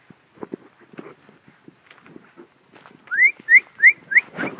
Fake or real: real